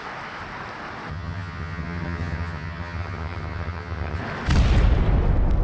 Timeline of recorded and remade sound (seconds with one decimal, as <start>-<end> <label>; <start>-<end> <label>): 0.0-1.1 recorded; 1.1-4.2 remade; 4.2-5.6 recorded